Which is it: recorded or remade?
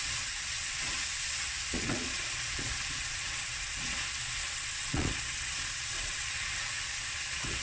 remade